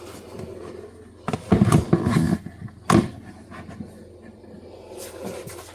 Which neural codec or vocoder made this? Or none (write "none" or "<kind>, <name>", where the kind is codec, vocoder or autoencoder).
none